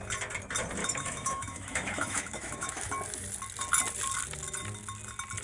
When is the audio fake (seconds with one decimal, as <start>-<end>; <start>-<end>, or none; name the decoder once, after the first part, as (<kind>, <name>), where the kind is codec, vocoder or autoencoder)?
0.8-2.9 (autoencoder, DAC-VAE)